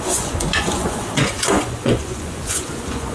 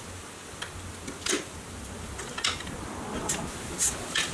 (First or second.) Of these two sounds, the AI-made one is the first